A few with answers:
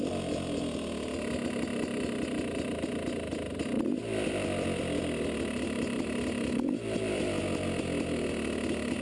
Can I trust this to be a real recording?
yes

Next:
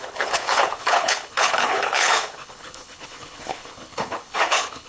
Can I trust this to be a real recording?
no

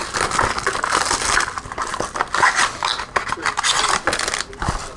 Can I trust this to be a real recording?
yes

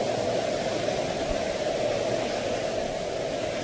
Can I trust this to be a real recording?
yes